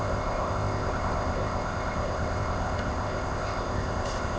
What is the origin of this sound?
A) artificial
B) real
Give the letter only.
A